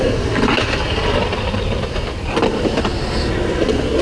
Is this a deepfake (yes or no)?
no